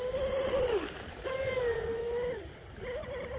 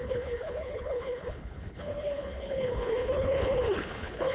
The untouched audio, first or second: first